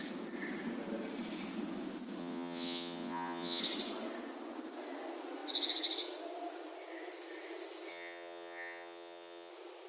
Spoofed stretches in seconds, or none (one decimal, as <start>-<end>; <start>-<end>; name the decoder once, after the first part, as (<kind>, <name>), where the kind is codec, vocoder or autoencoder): 2.2-3.6 (vocoder, WaveNeXt); 7.9-9.5